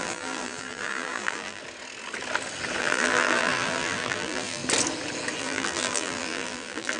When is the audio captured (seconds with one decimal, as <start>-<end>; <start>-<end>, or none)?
1.6-2.8; 4.6-5.4